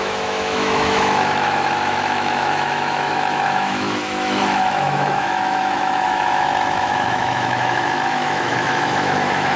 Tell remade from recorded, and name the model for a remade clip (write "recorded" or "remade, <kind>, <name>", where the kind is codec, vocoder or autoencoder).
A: remade, autoencoder, DAC-VAE